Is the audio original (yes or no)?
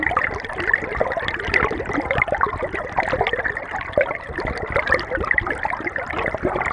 yes